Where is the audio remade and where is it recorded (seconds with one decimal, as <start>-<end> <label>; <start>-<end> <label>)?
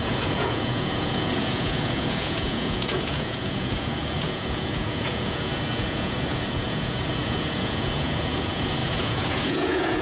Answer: 0.0-10.0 remade